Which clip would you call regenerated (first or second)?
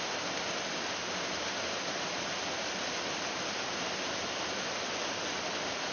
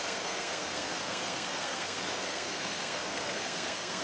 second